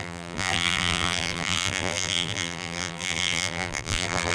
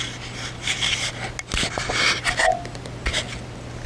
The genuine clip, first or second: second